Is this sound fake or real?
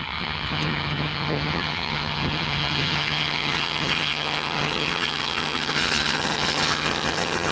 fake